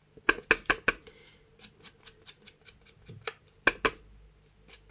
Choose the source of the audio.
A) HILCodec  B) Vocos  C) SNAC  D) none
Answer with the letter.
D